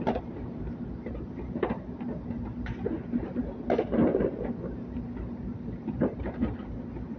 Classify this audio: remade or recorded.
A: remade